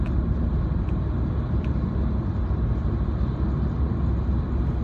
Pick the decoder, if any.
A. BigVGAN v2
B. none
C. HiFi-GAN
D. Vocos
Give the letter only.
B